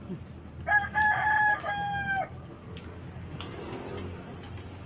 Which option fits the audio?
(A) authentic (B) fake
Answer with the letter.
A